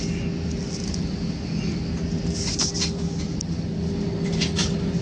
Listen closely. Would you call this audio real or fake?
real